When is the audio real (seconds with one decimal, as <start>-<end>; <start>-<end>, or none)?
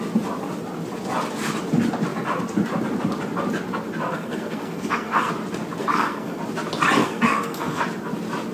0.0-4.1; 5.3-5.8; 6.4-7.0; 7.8-8.5